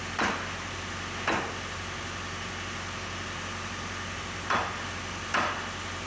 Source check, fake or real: real